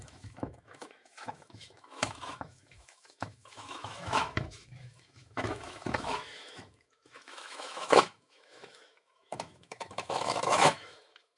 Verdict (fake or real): fake